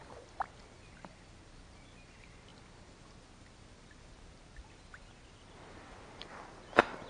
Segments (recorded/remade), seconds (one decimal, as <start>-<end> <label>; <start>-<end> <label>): 0.0-7.1 recorded